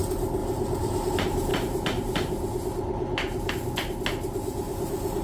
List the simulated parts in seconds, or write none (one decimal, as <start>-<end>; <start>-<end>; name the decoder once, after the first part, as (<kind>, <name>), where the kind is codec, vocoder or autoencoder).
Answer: none